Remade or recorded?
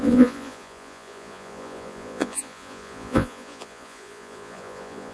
remade